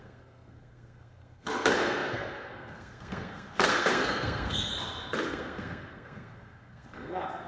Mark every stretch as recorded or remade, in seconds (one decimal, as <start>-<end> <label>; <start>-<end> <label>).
0.0-4.7 remade; 4.7-5.3 recorded; 5.3-7.5 remade